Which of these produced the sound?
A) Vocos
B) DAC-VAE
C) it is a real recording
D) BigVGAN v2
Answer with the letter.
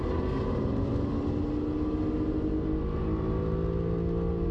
C